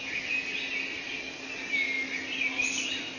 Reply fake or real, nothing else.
real